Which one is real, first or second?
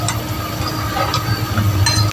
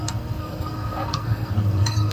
first